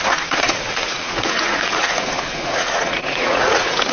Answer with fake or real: fake